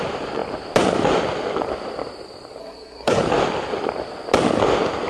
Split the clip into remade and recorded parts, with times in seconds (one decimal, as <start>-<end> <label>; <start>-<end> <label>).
0.0-2.6 recorded; 2.6-3.2 remade; 3.2-5.1 recorded